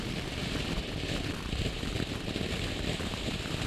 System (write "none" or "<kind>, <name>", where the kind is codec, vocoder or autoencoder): vocoder, BigVGAN v2